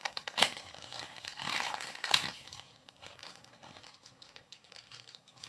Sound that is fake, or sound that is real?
fake